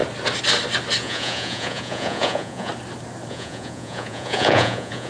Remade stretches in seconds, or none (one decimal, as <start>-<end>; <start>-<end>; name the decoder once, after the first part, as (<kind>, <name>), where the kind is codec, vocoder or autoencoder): 1.0-2.7 (vocoder, Vocos); 3.3-5.1